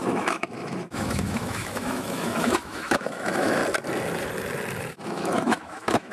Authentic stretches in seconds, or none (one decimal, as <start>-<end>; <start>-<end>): 3.6-4.9